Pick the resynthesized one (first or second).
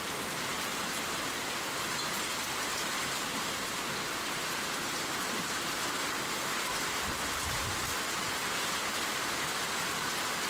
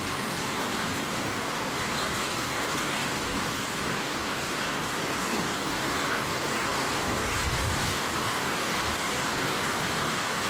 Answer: second